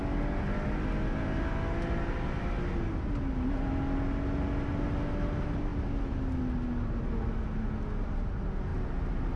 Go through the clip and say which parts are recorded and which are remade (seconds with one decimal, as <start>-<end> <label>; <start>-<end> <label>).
0.0-9.4 recorded

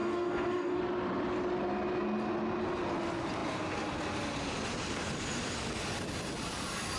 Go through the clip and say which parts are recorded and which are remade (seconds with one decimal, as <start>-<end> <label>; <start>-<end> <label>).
0.0-0.8 remade; 0.8-7.0 recorded

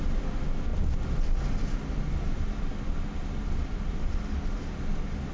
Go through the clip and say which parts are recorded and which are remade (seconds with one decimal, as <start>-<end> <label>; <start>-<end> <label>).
0.0-5.3 recorded

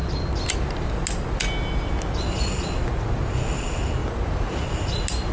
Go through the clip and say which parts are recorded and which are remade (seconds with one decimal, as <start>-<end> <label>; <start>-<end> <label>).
0.0-4.0 recorded; 4.0-4.7 remade; 4.7-5.3 recorded